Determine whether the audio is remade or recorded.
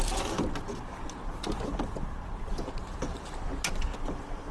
recorded